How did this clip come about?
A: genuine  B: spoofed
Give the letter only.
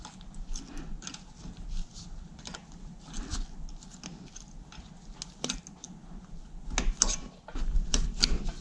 A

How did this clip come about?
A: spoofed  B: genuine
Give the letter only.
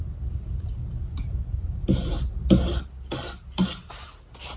B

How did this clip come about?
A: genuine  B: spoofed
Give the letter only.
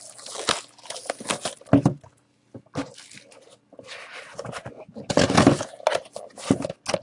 A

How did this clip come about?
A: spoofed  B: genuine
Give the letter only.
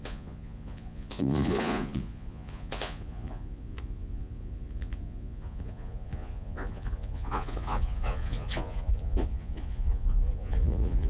A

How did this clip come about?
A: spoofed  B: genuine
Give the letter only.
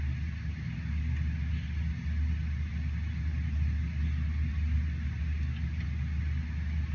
B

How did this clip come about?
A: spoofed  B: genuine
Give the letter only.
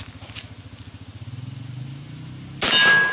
B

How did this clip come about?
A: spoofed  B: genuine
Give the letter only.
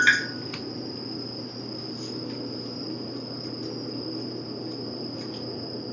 B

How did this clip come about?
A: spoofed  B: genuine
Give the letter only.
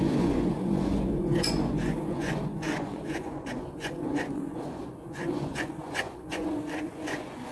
A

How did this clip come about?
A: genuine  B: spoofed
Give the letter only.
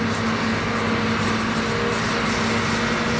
A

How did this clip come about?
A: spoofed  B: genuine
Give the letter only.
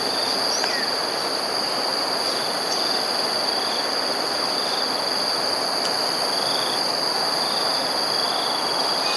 B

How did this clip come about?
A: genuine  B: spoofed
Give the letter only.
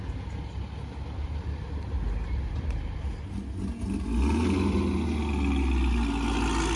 A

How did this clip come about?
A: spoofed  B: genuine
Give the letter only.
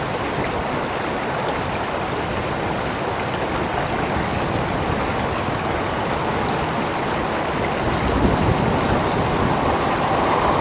B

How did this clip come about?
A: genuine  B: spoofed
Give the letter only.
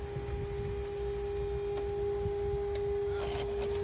A